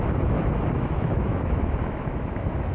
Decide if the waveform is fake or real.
fake